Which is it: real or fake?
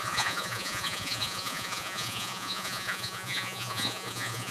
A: fake